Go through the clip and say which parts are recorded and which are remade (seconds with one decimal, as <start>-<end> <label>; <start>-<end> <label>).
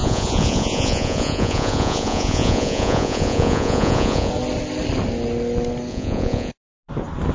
0.0-4.3 remade; 4.3-5.9 recorded; 5.9-6.5 remade; 6.5-7.3 recorded